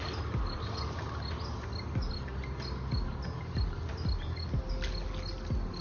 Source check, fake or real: real